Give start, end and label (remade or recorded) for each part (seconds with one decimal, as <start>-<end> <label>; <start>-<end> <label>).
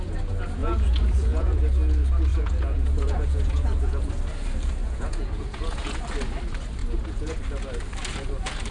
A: 0.0-0.6 recorded; 0.6-1.6 remade; 1.6-2.3 recorded; 2.3-4.1 remade; 4.1-4.8 recorded; 4.8-6.0 remade; 6.0-6.8 recorded; 6.8-7.4 remade; 7.4-8.7 recorded